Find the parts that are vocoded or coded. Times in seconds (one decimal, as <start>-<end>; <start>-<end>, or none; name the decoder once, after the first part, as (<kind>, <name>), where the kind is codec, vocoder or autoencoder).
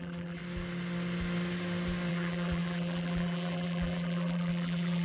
0.0-0.4 (vocoder, BigVGAN v2); 2.1-5.0